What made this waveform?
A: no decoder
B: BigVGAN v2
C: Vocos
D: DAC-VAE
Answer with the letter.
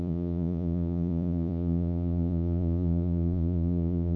C